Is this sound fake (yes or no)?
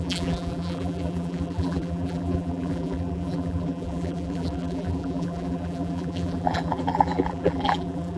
yes